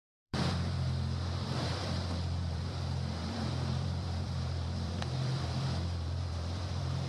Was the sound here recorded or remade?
remade